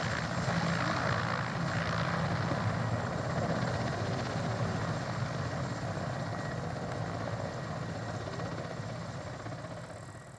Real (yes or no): yes